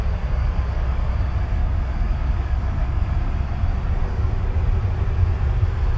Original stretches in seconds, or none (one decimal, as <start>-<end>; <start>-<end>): 0.0-0.4; 1.1-1.6; 3.1-4.0; 4.6-6.0